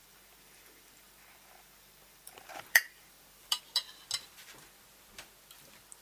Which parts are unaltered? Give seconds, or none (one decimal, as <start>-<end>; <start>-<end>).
3.6-6.0

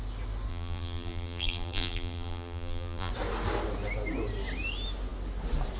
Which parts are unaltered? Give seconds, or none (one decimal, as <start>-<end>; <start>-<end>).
0.0-0.5; 3.1-5.8

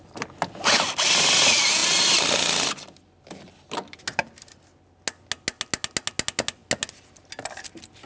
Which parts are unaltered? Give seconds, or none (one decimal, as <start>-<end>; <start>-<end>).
0.0-8.1

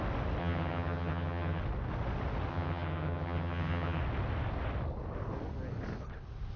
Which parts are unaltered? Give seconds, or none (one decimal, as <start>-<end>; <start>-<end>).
0.0-0.4; 1.6-2.5; 4.0-6.6

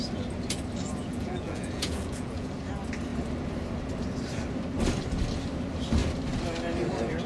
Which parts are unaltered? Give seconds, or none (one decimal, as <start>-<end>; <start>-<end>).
0.0-1.1; 2.5-7.3

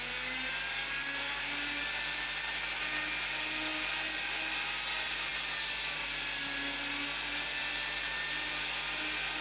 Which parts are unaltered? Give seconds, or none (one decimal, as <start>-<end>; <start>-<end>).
0.0-9.4